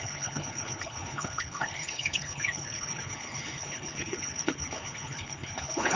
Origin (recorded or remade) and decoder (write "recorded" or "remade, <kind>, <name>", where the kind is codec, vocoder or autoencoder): remade, codec, HILCodec